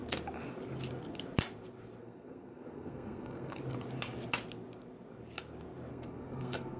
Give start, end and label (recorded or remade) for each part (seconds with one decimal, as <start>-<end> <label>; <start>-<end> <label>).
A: 0.0-2.0 recorded; 2.0-3.6 remade; 3.6-5.9 recorded; 5.9-6.8 remade